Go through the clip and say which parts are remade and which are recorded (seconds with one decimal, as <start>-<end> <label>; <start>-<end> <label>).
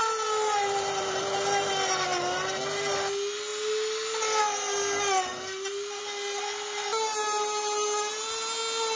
0.0-1.7 remade; 1.7-5.3 recorded; 5.3-6.0 remade; 6.0-9.0 recorded